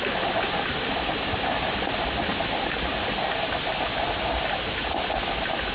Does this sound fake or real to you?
real